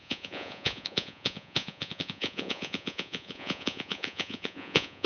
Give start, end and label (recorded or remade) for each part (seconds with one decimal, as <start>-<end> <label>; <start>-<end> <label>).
0.0-5.1 remade